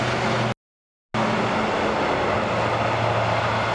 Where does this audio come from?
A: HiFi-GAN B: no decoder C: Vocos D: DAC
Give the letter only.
B